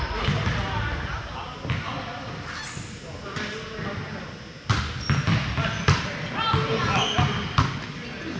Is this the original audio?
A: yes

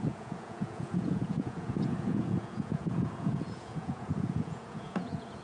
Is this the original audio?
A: no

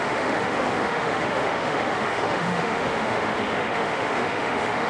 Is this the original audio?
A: no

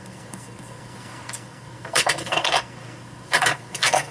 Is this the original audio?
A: no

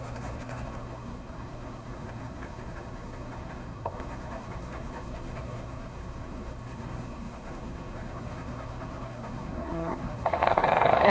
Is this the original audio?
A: no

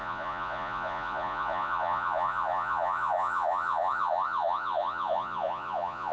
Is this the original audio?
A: no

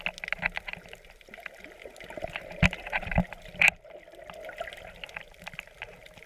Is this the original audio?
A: yes